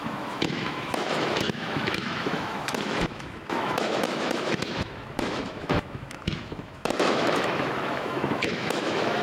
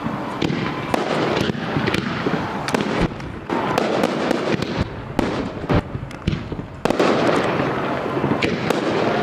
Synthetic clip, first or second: first